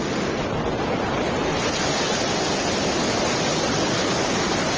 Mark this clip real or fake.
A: real